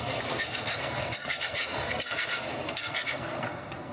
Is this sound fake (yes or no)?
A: yes